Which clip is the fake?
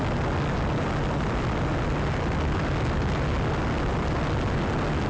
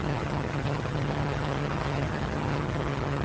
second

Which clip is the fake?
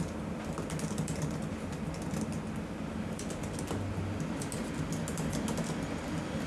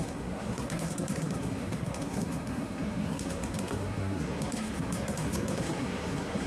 second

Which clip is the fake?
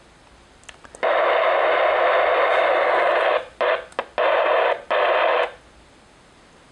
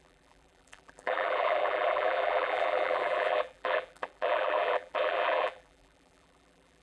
second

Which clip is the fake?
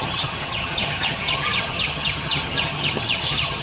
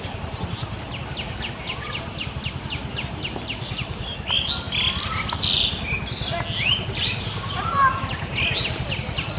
first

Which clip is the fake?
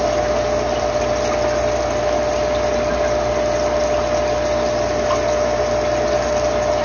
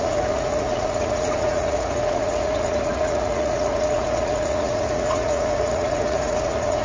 second